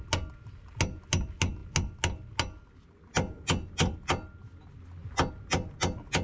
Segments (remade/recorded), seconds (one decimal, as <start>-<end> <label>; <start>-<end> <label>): 0.0-6.2 recorded